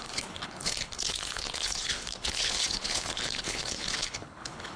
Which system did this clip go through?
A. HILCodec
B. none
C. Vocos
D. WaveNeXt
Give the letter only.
A